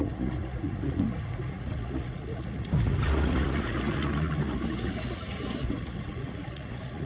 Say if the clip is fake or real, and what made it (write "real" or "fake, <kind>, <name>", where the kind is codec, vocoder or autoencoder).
fake, vocoder, Vocos